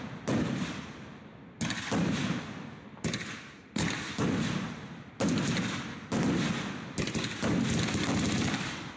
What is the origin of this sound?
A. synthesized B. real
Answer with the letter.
B